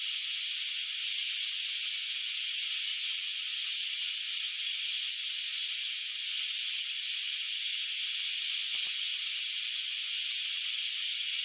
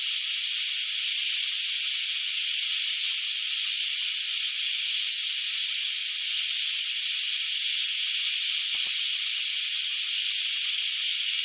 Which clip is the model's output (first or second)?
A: first